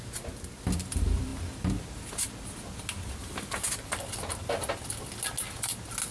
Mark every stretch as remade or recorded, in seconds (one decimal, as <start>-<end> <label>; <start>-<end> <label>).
0.0-6.1 recorded